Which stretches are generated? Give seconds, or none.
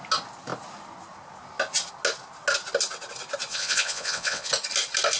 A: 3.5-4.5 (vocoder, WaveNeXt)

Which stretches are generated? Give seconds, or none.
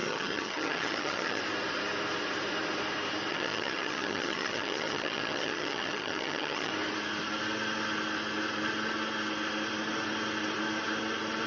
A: 0.0-1.4 (vocoder, HiFi-GAN); 3.3-6.7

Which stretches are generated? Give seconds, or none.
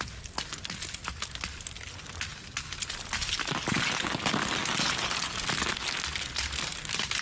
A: none